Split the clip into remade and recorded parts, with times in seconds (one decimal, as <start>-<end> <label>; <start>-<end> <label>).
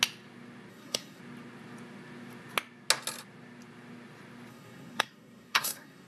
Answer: 0.0-0.7 recorded; 0.7-1.2 remade; 1.2-4.5 recorded; 4.5-6.1 remade